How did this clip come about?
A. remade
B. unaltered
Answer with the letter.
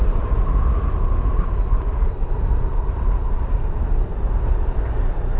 B